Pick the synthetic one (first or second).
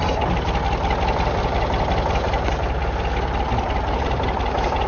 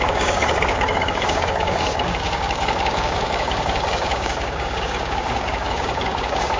second